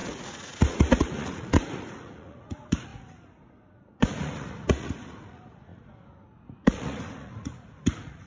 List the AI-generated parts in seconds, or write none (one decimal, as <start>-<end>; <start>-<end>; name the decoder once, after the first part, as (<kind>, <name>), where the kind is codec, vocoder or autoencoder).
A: 0.0-8.3 (vocoder, Vocos)